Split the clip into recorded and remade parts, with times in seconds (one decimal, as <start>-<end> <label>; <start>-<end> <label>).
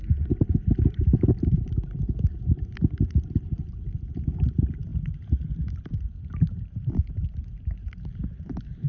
0.0-8.9 remade